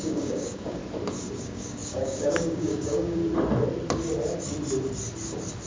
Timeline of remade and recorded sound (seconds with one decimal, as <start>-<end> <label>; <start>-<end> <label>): 0.0-0.8 remade; 0.8-1.4 recorded; 1.4-3.2 remade; 3.2-5.7 recorded